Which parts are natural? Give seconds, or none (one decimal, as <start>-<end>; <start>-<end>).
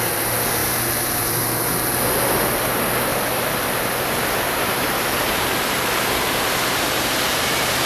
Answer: 0.0-0.6; 1.7-3.1